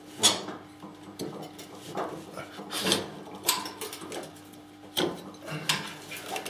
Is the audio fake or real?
real